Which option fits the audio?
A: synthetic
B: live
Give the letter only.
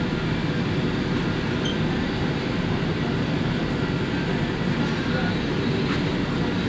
B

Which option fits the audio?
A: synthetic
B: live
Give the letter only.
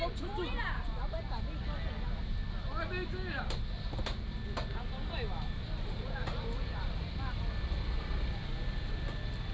B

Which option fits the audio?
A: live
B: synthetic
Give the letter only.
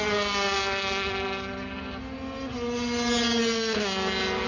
A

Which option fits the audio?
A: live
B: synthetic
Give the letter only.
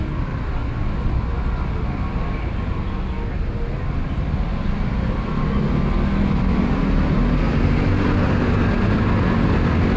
A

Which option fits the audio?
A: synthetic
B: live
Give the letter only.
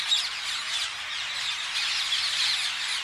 B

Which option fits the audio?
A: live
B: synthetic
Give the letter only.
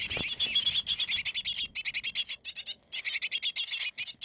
A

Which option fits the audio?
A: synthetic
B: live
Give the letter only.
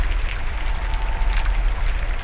B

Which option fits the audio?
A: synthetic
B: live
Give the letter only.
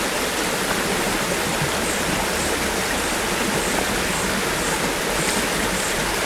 B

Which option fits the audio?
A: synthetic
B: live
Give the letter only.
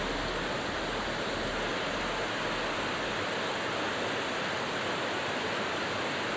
B